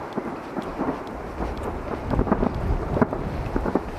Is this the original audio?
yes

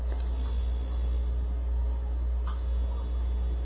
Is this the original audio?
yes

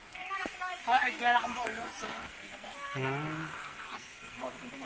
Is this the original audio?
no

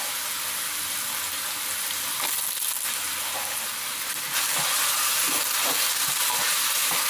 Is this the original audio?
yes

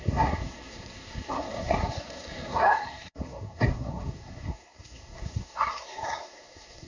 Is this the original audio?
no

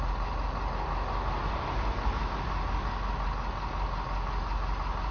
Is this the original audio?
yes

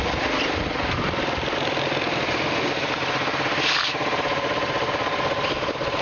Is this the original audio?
yes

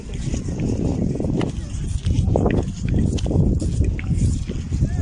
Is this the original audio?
yes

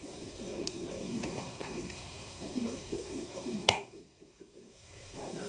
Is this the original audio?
no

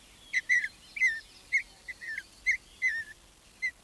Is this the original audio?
yes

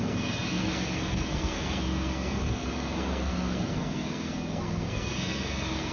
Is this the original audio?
no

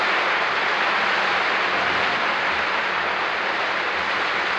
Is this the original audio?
yes